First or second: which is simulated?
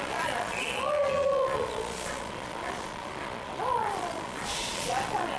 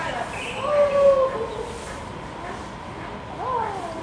first